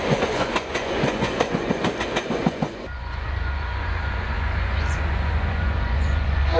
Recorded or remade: remade